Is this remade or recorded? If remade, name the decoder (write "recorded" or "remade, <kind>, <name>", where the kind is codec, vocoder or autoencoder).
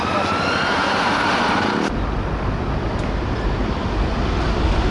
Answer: recorded